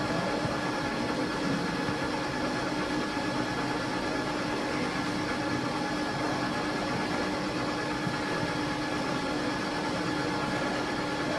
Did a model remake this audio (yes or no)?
no